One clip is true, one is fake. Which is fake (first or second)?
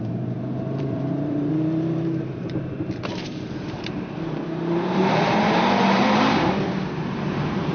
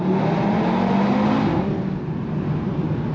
first